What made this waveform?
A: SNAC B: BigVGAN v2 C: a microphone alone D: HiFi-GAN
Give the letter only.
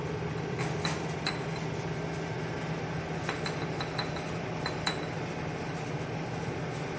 B